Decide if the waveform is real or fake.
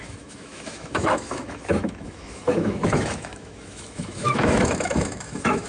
fake